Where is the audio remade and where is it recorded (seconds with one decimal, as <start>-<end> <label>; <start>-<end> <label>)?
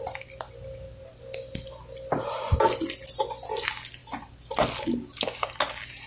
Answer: 0.0-6.1 recorded